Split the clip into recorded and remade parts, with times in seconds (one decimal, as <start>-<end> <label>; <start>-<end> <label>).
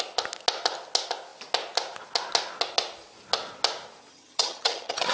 0.0-4.1 recorded; 4.1-5.1 remade